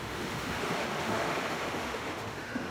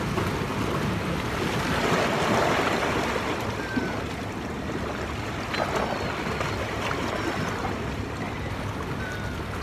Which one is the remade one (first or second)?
first